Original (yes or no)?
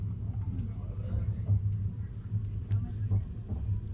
yes